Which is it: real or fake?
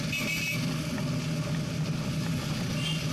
real